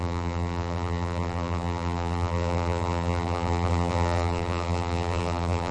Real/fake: fake